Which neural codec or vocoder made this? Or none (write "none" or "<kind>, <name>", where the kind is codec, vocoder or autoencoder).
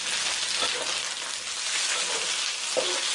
none